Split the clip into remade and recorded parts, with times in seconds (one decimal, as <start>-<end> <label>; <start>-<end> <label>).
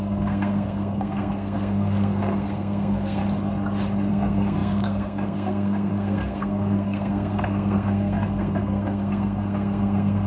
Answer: 0.0-3.2 remade; 3.2-4.1 recorded; 4.1-10.3 remade